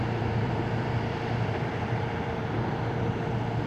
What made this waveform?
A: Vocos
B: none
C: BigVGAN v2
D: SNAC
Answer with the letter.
C